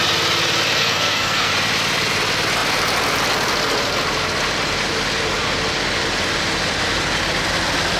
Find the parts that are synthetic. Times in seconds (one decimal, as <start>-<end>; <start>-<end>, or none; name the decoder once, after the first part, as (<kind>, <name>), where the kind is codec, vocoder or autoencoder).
0.8-1.5 (codec, SNAC)